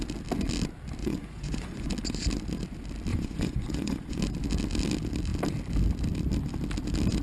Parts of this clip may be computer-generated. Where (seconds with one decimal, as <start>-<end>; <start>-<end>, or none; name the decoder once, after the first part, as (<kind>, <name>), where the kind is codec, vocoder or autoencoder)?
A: 1.0-1.9 (vocoder, Vocos); 3.1-4.2

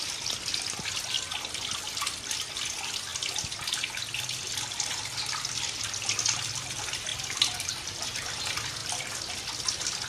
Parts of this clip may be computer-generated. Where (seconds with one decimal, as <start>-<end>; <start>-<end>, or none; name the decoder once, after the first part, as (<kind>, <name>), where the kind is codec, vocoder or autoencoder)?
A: none

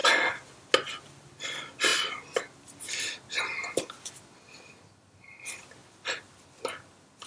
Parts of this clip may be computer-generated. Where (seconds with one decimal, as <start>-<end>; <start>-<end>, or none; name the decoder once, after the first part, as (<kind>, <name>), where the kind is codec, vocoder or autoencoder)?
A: none

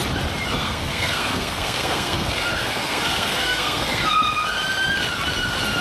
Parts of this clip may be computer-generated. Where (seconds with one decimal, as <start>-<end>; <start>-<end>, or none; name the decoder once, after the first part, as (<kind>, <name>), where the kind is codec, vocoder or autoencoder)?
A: 0.6-4.1 (codec, SNAC)

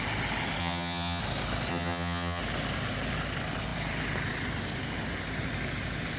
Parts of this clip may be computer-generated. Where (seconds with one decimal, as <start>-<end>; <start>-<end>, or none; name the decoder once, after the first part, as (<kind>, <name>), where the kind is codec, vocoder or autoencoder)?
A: 0.6-1.2 (vocoder, HiFi-GAN); 1.7-2.4

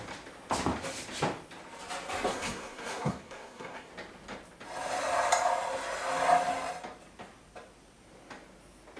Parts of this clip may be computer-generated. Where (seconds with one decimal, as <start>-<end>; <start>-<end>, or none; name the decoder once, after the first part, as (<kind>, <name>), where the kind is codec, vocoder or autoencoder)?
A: 2.3-3.9 (codec, SNAC)